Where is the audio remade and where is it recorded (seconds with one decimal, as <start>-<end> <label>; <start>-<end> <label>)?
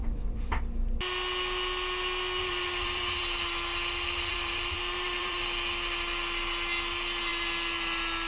0.0-0.6 remade; 0.6-2.4 recorded; 2.4-3.2 remade; 3.2-4.3 recorded; 4.3-5.4 remade; 5.4-8.3 recorded